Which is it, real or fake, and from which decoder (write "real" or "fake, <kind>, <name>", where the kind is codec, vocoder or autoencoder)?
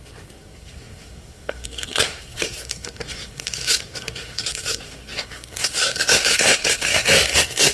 fake, codec, SNAC